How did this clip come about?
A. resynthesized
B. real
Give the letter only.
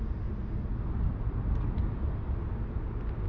B